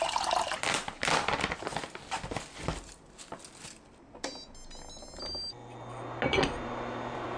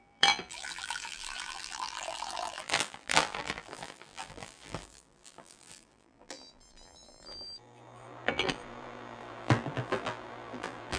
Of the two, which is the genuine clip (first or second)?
first